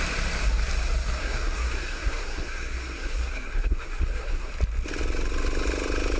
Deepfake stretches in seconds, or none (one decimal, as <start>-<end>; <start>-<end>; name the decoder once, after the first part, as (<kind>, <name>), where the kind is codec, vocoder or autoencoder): 1.2-4.5 (codec, SNAC)